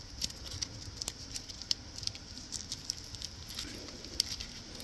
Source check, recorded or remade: recorded